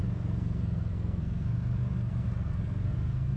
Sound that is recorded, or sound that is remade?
remade